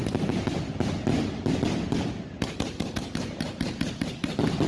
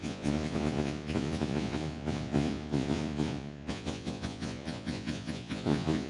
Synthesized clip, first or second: second